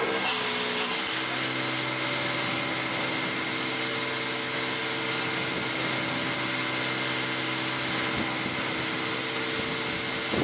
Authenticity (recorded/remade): recorded